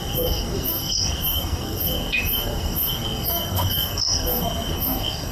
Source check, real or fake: fake